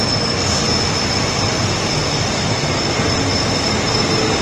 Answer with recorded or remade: recorded